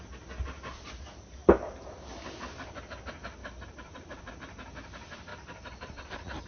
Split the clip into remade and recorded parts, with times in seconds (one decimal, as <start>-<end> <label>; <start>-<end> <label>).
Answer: 0.0-3.4 recorded; 3.4-4.3 remade; 4.3-5.3 recorded; 5.3-6.1 remade; 6.1-6.5 recorded